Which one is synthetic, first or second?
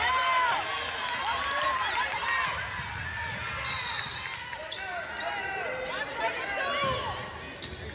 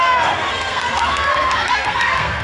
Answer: second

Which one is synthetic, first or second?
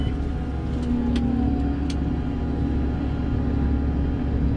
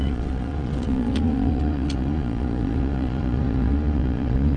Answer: second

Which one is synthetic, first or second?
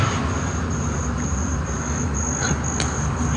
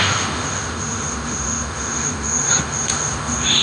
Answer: second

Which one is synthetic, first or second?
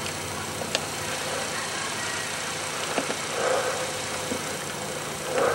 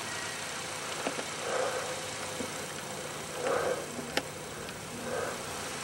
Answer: second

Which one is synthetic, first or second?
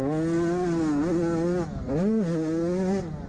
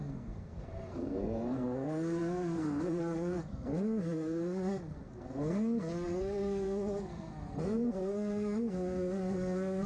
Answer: second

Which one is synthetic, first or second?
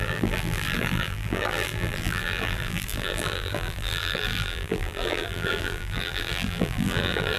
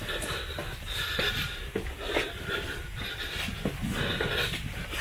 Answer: first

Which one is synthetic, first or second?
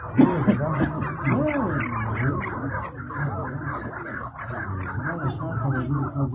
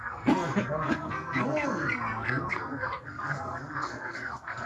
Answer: second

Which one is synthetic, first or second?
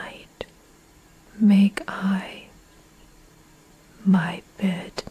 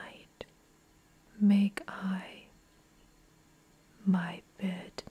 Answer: first